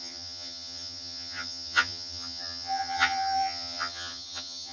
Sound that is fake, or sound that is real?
fake